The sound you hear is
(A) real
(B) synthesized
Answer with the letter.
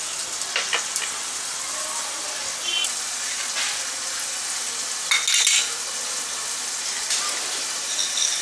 A